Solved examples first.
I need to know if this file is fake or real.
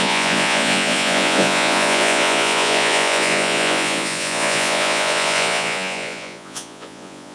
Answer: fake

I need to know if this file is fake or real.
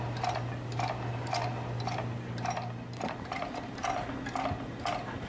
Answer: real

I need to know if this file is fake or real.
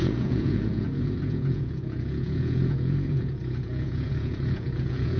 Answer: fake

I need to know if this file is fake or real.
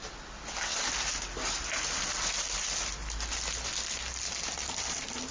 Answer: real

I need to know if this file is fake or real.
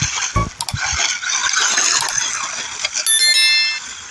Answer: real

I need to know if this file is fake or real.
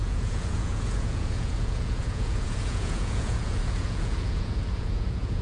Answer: fake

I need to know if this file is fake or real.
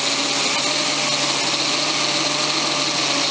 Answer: real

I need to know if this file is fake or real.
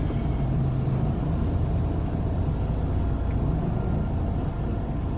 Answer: real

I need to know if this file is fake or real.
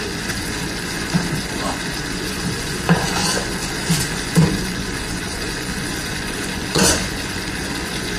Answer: fake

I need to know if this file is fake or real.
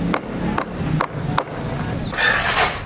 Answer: real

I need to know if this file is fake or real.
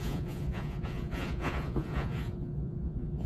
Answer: fake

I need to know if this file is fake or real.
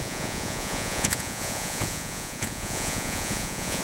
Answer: fake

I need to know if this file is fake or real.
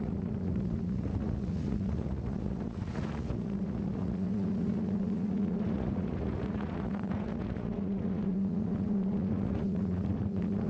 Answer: fake